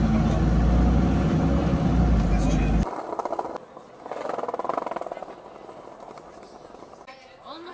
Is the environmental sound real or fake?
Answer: real